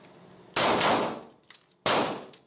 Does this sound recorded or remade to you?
recorded